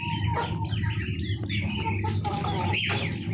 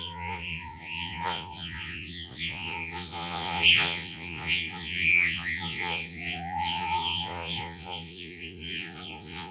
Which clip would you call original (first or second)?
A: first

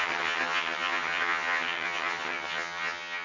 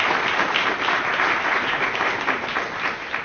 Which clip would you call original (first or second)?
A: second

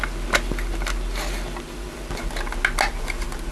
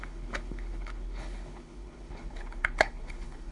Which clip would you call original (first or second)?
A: first